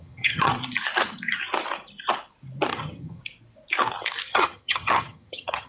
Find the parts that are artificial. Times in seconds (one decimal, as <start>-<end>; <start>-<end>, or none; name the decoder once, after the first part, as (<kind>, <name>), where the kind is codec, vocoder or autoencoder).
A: 0.0-0.5 (vocoder, HiFi-GAN); 2.7-3.2; 4.3-5.7

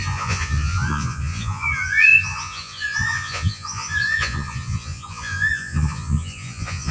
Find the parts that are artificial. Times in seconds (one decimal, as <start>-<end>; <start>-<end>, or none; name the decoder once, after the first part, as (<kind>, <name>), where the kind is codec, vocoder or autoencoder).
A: 0.0-6.9 (vocoder, Vocos)

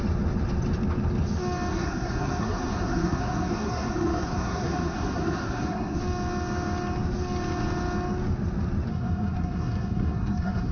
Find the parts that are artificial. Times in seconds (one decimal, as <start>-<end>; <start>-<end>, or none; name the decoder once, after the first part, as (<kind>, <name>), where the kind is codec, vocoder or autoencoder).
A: 1.7-6.0 (codec, SNAC); 8.9-10.7